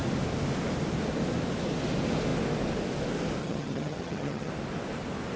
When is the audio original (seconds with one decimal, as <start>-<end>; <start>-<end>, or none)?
0.0-3.4; 4.5-5.4